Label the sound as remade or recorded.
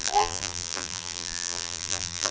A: remade